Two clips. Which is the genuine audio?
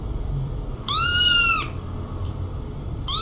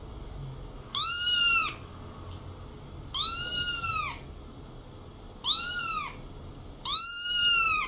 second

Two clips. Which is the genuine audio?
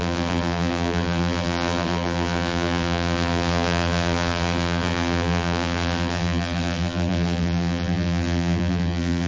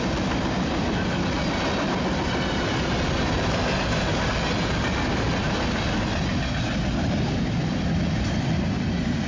second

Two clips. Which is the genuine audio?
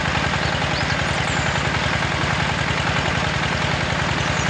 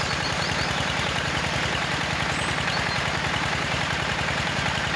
first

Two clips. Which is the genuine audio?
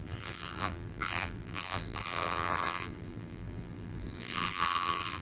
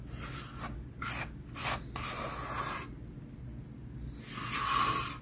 second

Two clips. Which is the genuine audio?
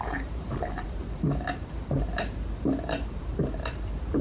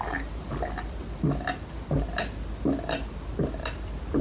second